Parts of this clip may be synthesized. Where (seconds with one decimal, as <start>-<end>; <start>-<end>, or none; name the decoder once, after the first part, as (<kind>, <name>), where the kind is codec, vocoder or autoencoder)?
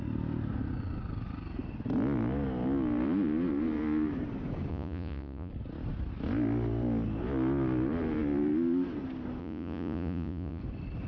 4.7-5.5 (vocoder, Vocos); 9.4-10.6